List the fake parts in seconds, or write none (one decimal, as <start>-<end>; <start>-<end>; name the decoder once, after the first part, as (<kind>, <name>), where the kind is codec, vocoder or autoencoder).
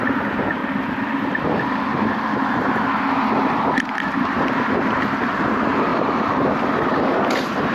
0.6-1.9 (vocoder, BigVGAN v2); 5.9-6.5